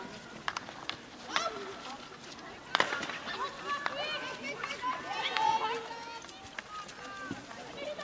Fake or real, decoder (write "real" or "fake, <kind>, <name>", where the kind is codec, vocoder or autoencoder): real